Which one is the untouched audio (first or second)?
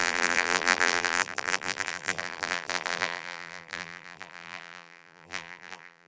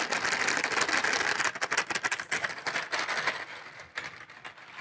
second